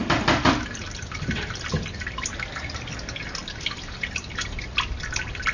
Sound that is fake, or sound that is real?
real